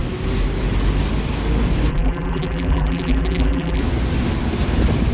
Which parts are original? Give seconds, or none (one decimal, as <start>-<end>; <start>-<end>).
0.0-1.9; 3.8-5.1